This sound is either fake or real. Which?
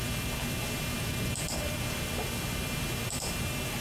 fake